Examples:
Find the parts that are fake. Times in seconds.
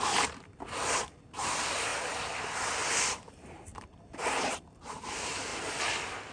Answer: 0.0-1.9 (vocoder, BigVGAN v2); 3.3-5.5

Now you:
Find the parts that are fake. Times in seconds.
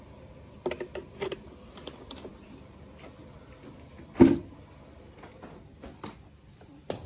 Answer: none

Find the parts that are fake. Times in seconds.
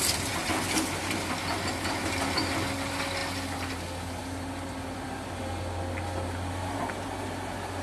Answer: 4.2-5.4 (vocoder, BigVGAN v2)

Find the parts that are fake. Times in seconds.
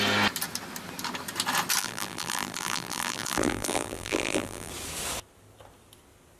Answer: 1.8-4.7 (vocoder, BigVGAN v2)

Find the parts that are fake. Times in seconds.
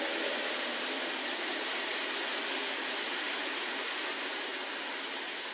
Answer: 0.0-1.9 (vocoder, BigVGAN v2); 4.1-4.5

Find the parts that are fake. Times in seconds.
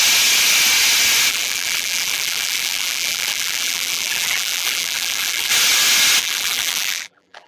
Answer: 1.3-5.5 (vocoder, BigVGAN v2); 6.2-7.5